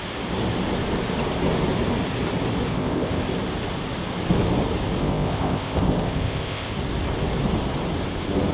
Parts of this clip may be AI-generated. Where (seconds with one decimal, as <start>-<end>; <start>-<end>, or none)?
2.7-3.2; 5.0-6.7